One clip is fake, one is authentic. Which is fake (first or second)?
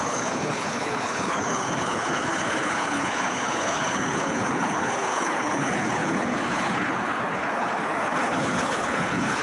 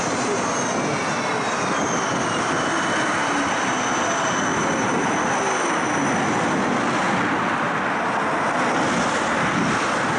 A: first